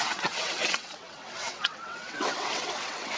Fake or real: fake